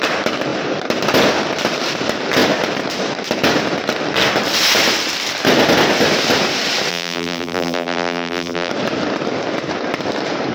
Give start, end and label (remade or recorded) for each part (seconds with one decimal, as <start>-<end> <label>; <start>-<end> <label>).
0.0-6.9 recorded; 6.9-8.7 remade; 8.7-10.5 recorded